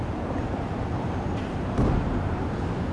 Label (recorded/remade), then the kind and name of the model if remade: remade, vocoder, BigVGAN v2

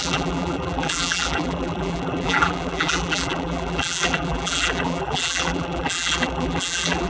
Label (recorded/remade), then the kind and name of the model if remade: remade, vocoder, BigVGAN v2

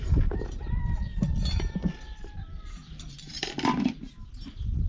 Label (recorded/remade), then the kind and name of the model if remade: recorded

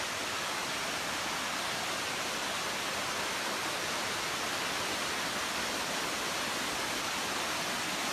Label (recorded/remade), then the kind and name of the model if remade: recorded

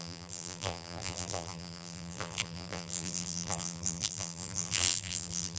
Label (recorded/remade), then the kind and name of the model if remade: remade, vocoder, BigVGAN v2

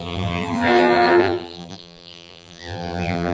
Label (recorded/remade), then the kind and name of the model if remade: remade, vocoder, BigVGAN v2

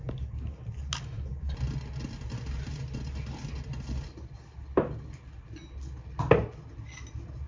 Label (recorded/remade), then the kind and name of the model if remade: recorded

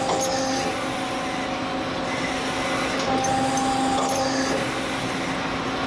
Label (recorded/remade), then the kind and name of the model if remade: recorded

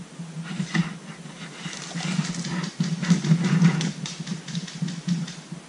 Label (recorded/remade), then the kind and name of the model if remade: recorded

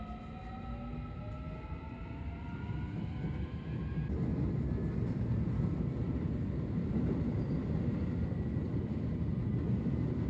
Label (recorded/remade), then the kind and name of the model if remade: recorded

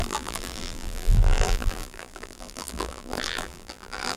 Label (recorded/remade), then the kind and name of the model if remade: remade, vocoder, BigVGAN v2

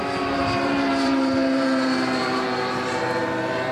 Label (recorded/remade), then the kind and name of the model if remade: remade, vocoder, BigVGAN v2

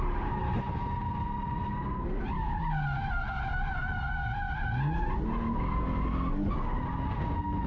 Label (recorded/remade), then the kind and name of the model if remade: recorded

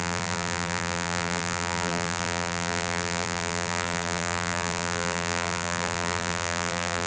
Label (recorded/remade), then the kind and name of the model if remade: remade, vocoder, BigVGAN v2